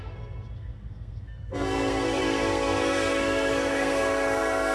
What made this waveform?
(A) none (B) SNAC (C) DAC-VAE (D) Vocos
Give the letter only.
B